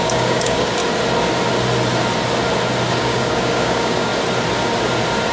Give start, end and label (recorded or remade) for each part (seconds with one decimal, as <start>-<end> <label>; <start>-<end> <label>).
0.0-0.8 remade; 0.8-3.0 recorded; 3.0-4.1 remade; 4.1-5.3 recorded